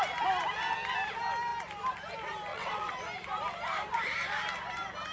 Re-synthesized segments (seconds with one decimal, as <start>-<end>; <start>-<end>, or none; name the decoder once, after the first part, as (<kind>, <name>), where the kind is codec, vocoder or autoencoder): 2.5-3.0 (vocoder, WaveNeXt)